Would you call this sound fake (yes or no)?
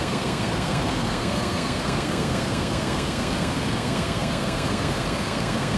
yes